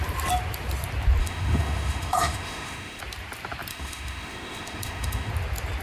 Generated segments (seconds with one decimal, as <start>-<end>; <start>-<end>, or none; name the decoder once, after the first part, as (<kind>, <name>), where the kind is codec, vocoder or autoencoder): 1.2-3.0 (autoencoder, DAC-VAE); 3.7-5.3